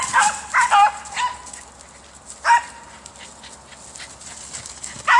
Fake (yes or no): no